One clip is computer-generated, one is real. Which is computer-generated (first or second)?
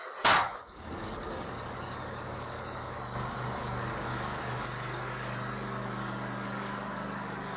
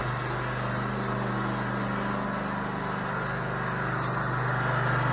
first